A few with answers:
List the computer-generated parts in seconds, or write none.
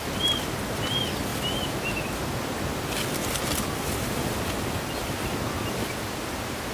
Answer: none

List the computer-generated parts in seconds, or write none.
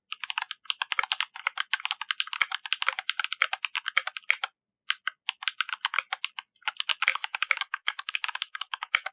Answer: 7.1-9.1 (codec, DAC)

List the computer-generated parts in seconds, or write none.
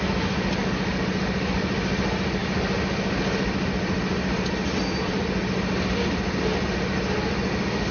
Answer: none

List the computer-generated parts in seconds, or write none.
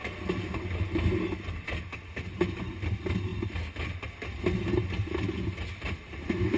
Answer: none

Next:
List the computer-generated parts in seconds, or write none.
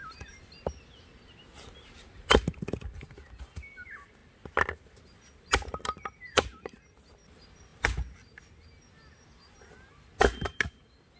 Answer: none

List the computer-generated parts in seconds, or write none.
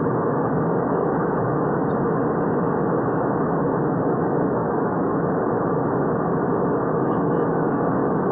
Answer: 0.0-1.8 (codec, DAC); 3.9-5.1; 6.8-8.3